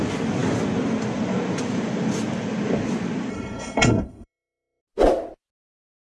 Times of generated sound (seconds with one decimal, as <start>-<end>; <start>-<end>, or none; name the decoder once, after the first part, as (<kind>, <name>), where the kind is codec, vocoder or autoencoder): 3.3-4.8 (codec, SNAC)